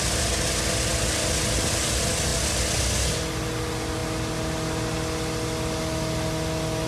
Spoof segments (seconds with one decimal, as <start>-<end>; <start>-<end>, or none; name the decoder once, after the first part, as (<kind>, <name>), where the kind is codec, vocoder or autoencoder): none